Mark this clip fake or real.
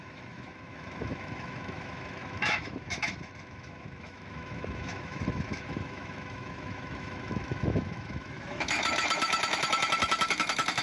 fake